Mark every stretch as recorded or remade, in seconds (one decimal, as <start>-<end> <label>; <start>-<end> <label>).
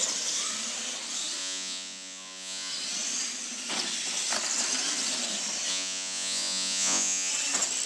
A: 0.0-1.4 recorded; 1.4-2.7 remade; 2.7-5.7 recorded; 5.7-7.3 remade; 7.3-7.9 recorded